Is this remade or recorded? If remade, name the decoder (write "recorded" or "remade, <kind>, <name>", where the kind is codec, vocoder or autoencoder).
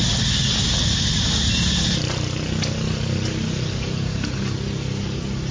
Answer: recorded